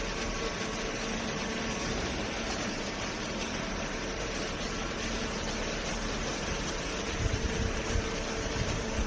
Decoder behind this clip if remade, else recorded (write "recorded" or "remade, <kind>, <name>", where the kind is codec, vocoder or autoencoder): remade, vocoder, BigVGAN v2